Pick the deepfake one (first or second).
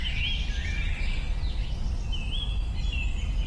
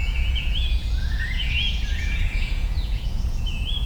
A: second